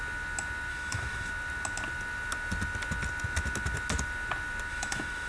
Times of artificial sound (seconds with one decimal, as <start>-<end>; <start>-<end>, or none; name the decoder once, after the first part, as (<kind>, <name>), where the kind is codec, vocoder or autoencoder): 0.7-1.3 (autoencoder, DAC-VAE); 4.7-5.3